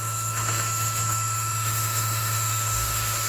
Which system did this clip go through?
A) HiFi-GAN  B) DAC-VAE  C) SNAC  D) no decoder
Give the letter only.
B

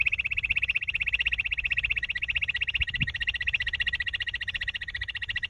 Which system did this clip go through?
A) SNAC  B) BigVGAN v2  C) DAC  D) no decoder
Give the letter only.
D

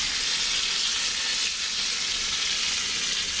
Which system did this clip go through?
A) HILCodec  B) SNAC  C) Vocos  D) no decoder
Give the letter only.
D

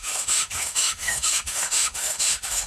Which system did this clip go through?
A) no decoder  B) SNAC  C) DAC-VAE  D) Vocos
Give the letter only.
C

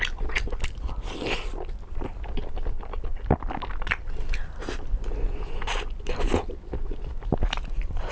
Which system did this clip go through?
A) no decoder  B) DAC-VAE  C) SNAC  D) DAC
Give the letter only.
A